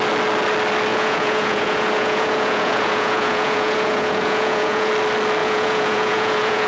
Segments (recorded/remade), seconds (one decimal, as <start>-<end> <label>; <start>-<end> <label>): 0.0-0.9 recorded; 0.9-4.9 remade; 4.9-5.4 recorded; 5.4-6.7 remade